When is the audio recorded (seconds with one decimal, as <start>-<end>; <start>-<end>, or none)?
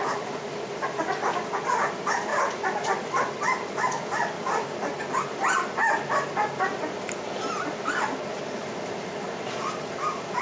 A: 0.0-10.4